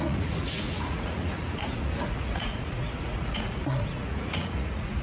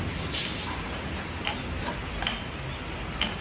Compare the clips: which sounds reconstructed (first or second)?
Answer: first